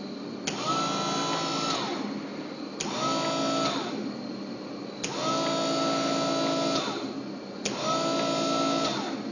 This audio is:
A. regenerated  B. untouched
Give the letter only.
B